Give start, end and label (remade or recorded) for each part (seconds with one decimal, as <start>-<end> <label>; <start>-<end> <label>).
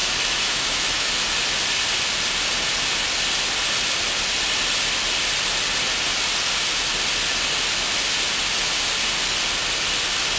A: 0.0-1.1 remade; 1.1-10.4 recorded